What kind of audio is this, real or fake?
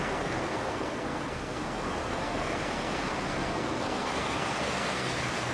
fake